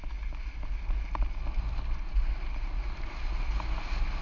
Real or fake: real